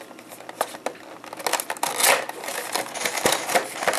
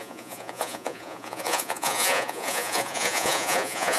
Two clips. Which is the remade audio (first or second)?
second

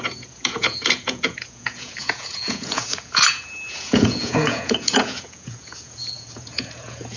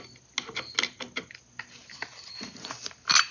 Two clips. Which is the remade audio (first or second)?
first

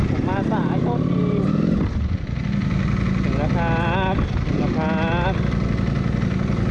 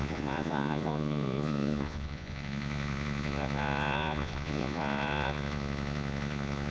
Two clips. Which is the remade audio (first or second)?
second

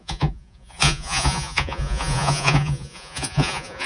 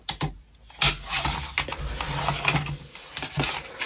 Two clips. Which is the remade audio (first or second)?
first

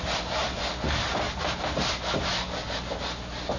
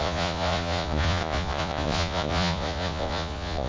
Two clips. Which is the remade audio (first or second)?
second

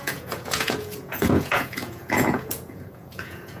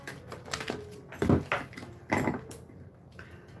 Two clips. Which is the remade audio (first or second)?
first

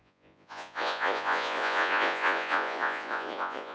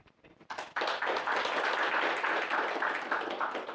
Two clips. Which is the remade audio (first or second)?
first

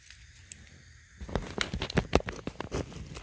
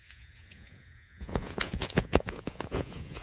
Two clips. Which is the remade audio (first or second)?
second